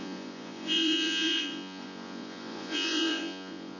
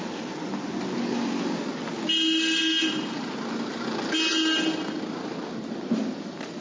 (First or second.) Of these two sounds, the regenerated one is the first